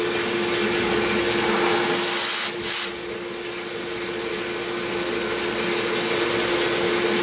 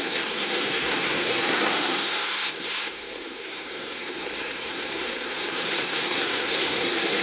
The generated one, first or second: second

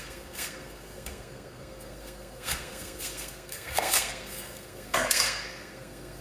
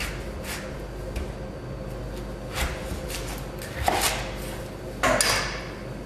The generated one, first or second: first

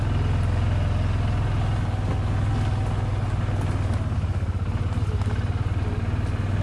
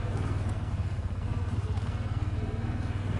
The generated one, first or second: second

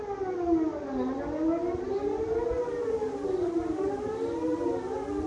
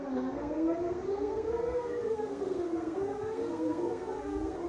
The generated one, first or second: second